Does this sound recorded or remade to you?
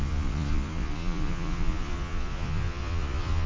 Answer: remade